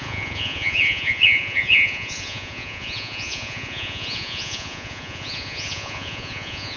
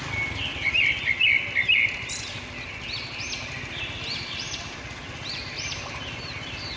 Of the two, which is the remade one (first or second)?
first